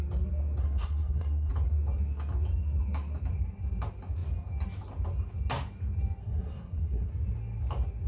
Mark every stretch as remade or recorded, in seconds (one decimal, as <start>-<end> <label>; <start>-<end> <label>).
0.0-0.6 recorded; 0.6-1.5 remade; 1.5-6.2 recorded; 6.2-7.1 remade; 7.1-8.1 recorded